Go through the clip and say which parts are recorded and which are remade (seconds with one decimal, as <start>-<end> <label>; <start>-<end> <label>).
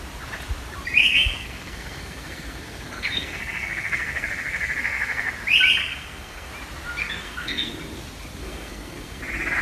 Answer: 0.0-1.0 recorded; 1.0-5.3 remade; 5.3-5.8 recorded; 5.8-6.5 remade; 6.5-7.0 recorded; 7.0-7.7 remade; 7.7-8.4 recorded; 8.4-9.2 remade; 9.2-9.6 recorded